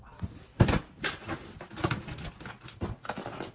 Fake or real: real